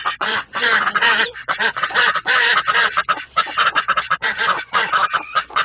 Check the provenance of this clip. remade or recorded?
remade